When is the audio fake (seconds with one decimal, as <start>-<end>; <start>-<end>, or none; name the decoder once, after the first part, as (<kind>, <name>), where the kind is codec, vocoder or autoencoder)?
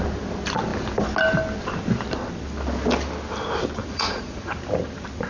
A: 3.8-4.5 (vocoder, Vocos)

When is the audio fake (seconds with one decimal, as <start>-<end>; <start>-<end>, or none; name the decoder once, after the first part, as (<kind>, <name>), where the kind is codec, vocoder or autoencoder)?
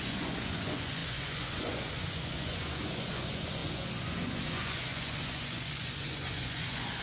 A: 0.0-7.0 (vocoder, Vocos)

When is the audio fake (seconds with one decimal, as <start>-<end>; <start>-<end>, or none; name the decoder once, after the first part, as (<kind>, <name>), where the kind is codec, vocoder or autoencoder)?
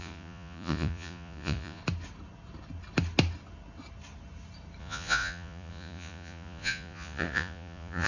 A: 0.0-1.8 (vocoder, Vocos); 4.8-8.1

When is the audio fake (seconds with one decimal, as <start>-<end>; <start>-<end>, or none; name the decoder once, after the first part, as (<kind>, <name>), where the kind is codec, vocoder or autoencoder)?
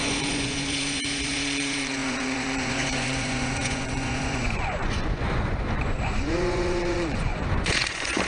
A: 0.0-8.3 (vocoder, Vocos)